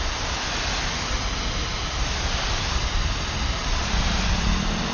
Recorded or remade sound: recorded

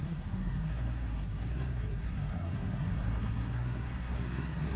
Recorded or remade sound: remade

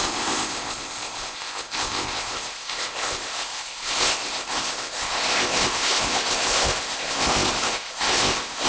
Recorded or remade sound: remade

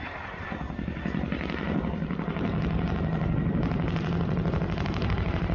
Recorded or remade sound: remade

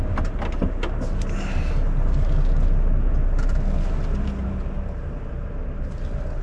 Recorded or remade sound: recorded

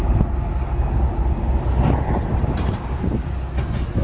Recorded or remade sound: recorded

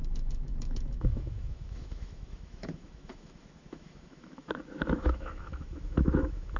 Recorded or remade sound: remade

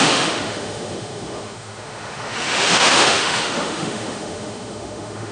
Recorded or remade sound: remade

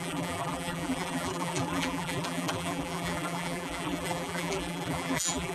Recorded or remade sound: remade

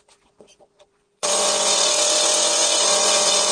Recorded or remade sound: remade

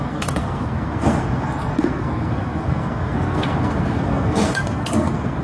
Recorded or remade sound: remade